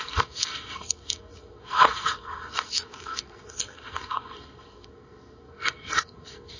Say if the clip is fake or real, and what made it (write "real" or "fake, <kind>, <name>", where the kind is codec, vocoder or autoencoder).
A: fake, codec, SNAC